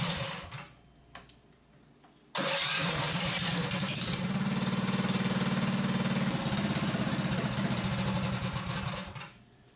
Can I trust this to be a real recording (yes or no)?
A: yes